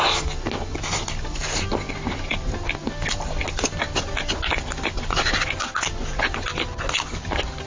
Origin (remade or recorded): recorded